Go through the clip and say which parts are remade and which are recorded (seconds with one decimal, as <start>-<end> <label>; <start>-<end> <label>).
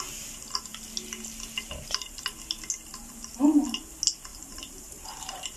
0.0-4.3 recorded; 4.3-5.6 remade